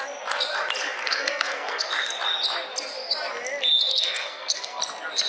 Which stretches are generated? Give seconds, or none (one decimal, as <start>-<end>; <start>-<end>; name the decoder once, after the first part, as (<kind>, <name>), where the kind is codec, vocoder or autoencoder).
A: 1.0-1.9 (codec, SNAC); 3.9-4.8